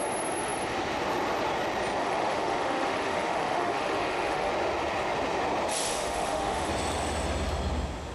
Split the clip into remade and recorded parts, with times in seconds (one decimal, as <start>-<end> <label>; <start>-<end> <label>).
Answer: 0.0-2.0 recorded; 2.0-4.5 remade; 4.5-5.7 recorded; 5.7-6.7 remade; 6.7-8.1 recorded